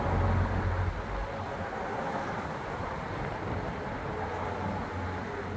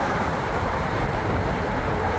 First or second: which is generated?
second